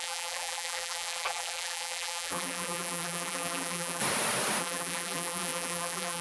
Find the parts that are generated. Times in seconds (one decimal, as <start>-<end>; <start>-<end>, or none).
0.0-4.0; 4.6-6.2